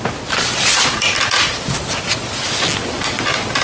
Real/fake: real